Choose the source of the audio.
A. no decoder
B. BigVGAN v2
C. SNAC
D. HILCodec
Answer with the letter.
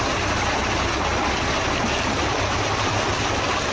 A